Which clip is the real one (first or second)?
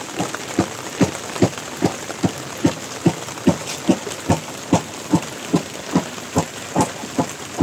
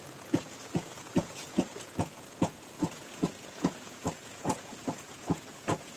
first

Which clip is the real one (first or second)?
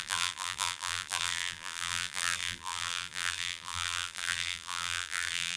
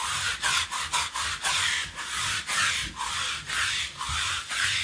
second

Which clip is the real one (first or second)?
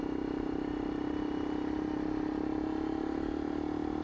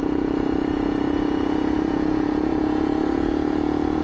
first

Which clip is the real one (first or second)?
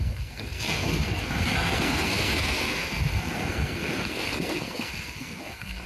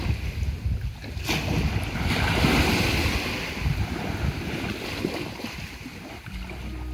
second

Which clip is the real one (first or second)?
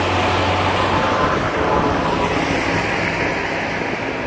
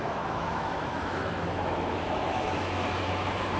first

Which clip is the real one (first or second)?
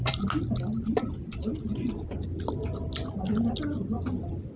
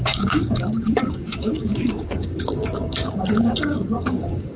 first